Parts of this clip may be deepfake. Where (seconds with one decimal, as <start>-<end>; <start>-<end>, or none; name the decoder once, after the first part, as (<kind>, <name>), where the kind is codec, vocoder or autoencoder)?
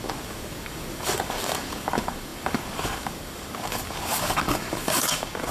0.0-5.5 (codec, DAC)